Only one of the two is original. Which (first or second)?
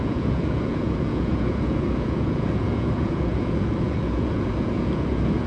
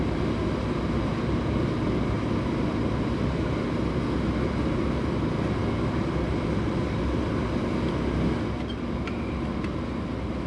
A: second